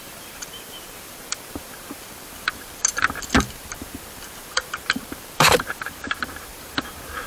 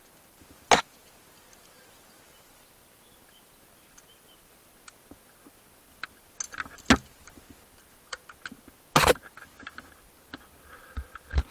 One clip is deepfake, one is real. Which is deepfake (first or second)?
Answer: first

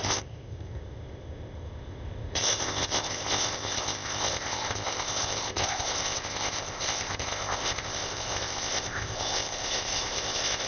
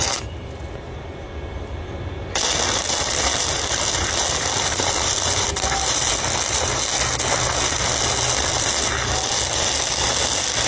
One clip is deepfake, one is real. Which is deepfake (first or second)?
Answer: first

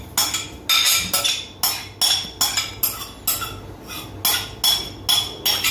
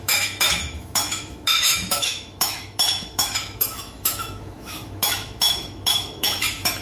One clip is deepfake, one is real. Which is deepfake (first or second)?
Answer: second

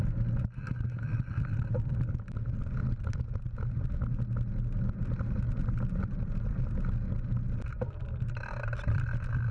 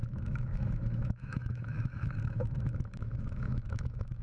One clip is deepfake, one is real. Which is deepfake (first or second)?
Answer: second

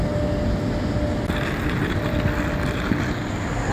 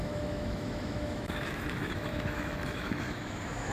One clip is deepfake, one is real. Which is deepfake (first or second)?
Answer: second